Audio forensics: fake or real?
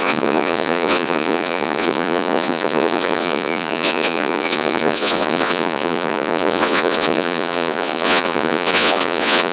fake